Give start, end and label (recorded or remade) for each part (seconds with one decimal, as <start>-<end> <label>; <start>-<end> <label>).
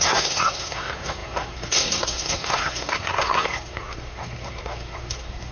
0.0-5.5 remade